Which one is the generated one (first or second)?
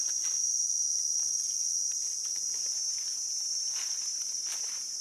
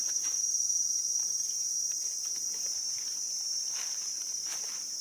second